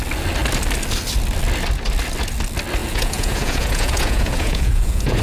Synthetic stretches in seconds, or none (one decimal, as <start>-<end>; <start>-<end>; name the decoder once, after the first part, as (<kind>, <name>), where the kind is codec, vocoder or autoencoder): 2.8-5.2 (vocoder, Vocos)